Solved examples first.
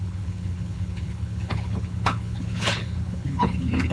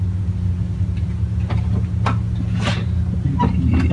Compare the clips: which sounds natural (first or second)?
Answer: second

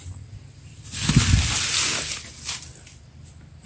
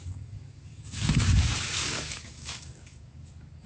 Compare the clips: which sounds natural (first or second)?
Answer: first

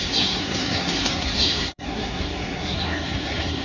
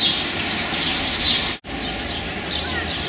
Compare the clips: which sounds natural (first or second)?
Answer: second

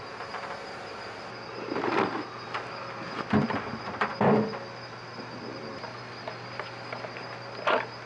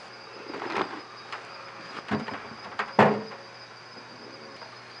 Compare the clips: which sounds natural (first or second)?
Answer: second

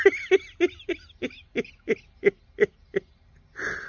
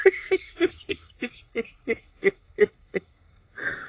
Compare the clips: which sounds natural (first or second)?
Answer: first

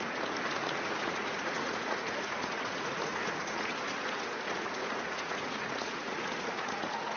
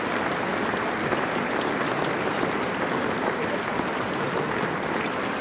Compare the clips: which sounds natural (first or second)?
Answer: second